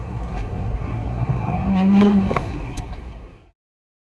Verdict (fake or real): fake